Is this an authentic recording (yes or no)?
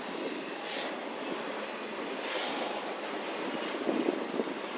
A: yes